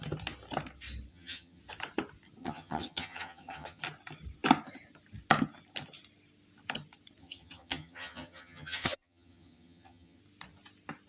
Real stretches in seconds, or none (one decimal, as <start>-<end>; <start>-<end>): 0.0-1.1; 1.6-2.4; 3.8-7.2; 10.2-11.1